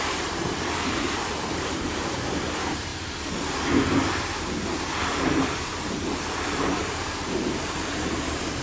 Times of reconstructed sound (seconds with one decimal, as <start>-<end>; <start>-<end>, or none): 0.0-2.9; 4.4-8.6